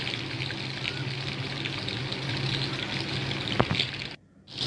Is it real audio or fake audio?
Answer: real